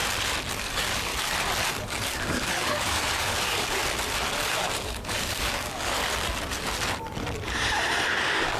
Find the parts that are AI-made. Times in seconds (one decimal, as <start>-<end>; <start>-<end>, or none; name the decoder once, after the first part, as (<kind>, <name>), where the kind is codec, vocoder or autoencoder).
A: 0.6-1.1 (codec, DAC); 1.7-3.8; 4.5-6.0; 8.1-8.6